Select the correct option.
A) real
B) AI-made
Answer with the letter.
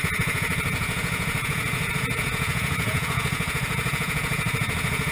B